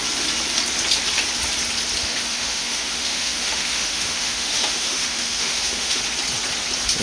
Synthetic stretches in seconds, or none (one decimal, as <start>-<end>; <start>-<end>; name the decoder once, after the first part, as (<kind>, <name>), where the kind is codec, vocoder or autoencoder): 2.0-6.0 (autoencoder, DAC-VAE)